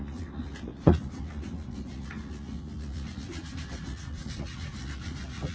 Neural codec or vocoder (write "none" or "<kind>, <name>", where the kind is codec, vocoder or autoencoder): vocoder, Vocos